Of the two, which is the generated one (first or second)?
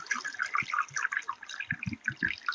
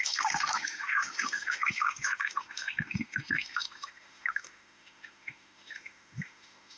second